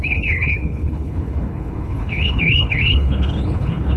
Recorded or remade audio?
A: remade